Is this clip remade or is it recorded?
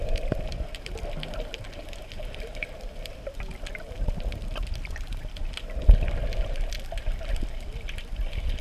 recorded